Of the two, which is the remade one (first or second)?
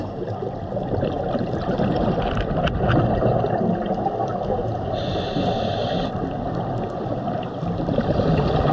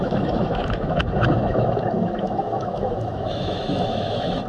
second